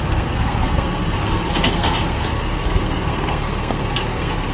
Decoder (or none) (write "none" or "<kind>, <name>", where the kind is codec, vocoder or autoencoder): codec, SNAC